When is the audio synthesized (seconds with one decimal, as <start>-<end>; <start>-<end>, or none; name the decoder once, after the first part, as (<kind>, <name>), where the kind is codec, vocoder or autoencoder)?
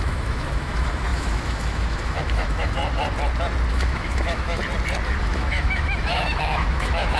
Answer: 0.0-2.8 (autoencoder, DAC-VAE); 3.7-4.6; 5.2-7.2